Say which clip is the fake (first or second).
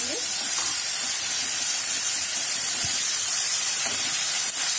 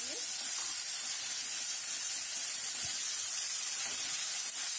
first